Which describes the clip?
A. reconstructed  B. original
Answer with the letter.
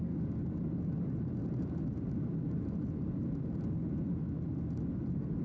B